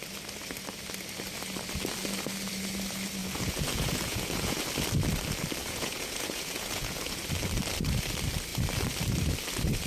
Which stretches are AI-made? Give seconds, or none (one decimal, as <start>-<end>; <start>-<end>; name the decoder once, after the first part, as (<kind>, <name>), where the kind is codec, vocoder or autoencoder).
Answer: 3.2-4.6 (vocoder, Vocos); 5.6-7.2

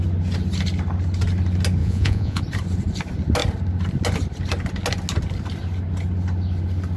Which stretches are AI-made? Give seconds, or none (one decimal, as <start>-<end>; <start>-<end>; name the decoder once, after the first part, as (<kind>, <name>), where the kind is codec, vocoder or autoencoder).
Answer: 1.8-2.4 (vocoder, Vocos)

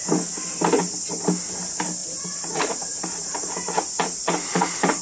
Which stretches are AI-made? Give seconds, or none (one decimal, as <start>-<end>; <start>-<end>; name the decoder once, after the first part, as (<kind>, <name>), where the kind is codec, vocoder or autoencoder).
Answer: 2.0-5.0 (vocoder, Vocos)

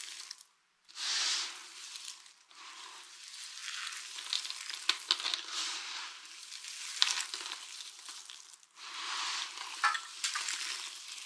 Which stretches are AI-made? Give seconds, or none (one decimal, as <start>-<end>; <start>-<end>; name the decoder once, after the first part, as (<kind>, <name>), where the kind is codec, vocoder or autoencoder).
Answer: none

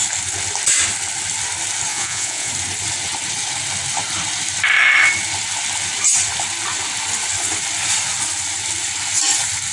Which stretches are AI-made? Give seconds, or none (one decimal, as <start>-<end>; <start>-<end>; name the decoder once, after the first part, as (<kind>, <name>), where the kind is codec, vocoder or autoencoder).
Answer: 1.9-2.5 (vocoder, Vocos)

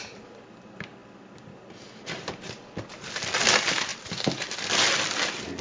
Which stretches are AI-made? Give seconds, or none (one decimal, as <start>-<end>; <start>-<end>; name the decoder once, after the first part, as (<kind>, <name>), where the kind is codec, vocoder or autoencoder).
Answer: none